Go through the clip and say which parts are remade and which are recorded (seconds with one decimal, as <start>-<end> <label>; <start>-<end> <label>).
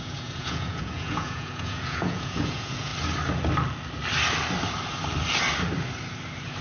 0.0-2.9 remade; 2.9-6.6 recorded